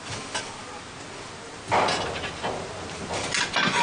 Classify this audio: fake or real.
real